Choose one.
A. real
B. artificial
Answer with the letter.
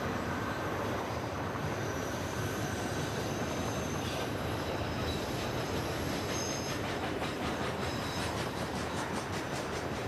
B